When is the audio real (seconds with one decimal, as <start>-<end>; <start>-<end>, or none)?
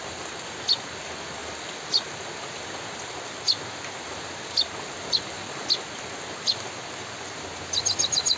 0.0-8.4